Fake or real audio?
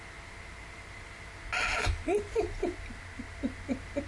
real